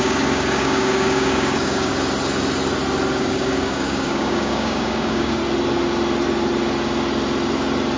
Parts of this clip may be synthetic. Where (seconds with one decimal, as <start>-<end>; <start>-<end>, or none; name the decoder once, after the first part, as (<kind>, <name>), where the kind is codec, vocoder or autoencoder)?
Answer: 0.0-1.9 (codec, DAC); 3.2-5.4